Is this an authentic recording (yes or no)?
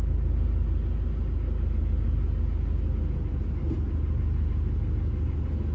yes